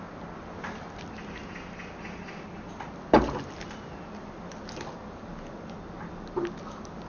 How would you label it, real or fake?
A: real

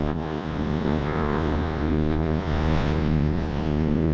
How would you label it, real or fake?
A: fake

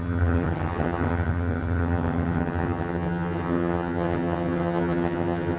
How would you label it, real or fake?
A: fake